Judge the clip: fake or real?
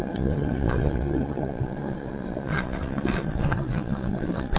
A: fake